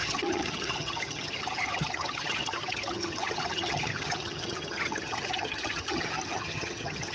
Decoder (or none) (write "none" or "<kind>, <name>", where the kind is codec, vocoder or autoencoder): vocoder, HiFi-GAN